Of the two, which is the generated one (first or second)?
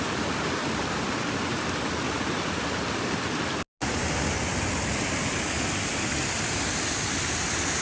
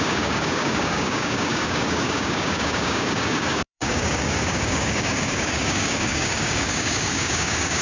second